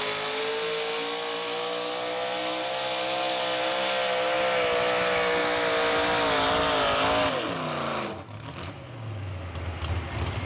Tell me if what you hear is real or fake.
real